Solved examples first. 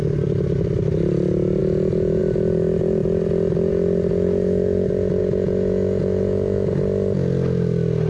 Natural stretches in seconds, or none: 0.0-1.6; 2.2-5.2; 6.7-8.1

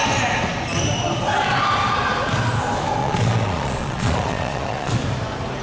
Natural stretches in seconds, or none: 0.0-3.0; 4.9-5.6

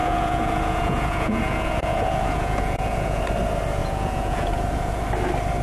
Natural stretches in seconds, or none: 3.2-3.8; 5.0-5.6